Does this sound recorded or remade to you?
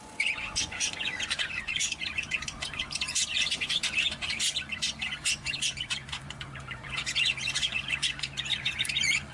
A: remade